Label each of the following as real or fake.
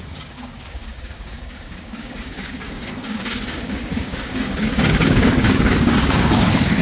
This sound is fake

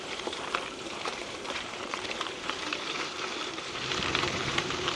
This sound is fake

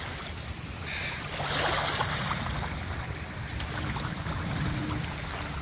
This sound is fake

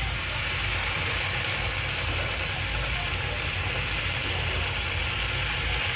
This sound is real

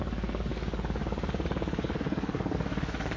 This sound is fake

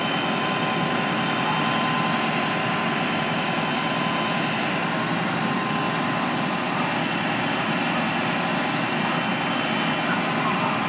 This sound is real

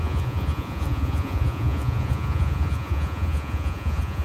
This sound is fake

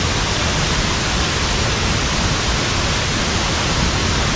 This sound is real